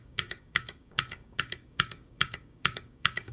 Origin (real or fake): fake